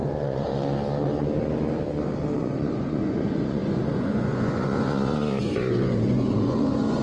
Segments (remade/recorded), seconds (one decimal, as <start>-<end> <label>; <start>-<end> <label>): 0.0-0.5 remade; 0.5-2.4 recorded; 2.4-7.0 remade